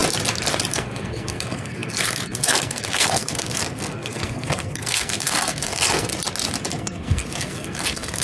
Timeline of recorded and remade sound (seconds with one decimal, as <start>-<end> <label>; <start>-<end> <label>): 0.0-0.7 recorded; 0.7-6.1 remade; 6.1-6.7 recorded; 6.7-8.2 remade